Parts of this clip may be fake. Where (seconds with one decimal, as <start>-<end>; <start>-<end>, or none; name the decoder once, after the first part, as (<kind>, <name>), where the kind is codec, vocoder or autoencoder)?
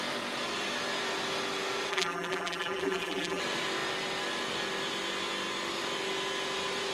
1.9-3.4 (vocoder, BigVGAN v2)